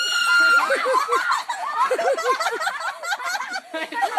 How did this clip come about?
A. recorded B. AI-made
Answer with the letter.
A